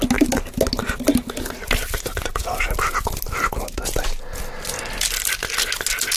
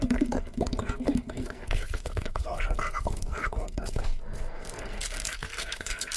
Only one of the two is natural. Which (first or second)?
first